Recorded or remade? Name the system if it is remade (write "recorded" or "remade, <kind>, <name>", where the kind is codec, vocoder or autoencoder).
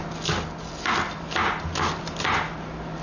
recorded